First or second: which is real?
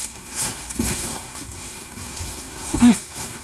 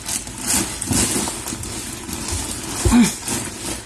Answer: second